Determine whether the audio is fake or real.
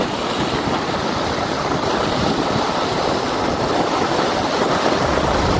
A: real